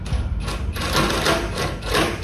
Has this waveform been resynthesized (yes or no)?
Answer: no